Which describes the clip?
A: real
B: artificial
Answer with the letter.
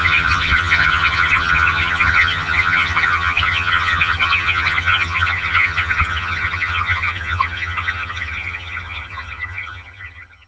B